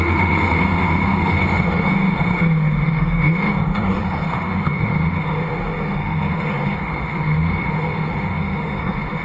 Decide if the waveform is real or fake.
fake